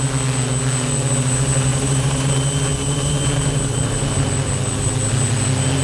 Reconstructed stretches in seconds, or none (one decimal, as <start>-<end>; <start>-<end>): 1.7-2.3